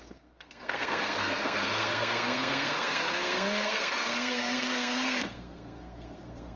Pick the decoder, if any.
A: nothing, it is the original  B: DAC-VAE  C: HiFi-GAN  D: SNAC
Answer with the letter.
D